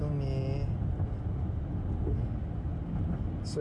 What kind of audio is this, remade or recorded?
recorded